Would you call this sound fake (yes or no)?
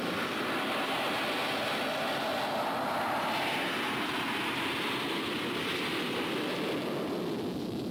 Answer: no